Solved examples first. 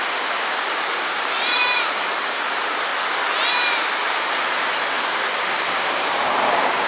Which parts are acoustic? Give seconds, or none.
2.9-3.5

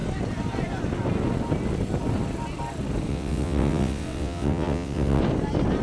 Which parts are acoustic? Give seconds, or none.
0.0-3.1; 5.2-5.8

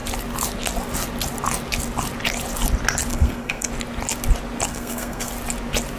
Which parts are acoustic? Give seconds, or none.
0.0-3.1; 3.7-4.7; 5.3-6.0

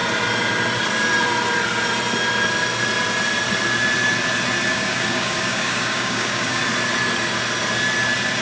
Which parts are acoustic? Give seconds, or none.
0.0-4.7; 6.6-8.4

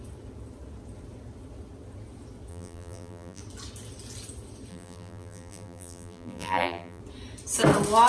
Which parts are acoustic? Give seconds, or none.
0.0-2.5; 3.4-4.7; 7.0-8.1

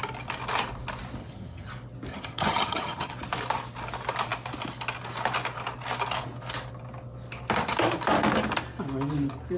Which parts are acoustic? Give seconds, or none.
0.0-1.2; 1.7-2.1; 3.1-9.6

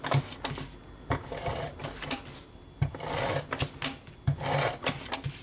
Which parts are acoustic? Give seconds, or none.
0.0-5.4